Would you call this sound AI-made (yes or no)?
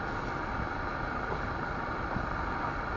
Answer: no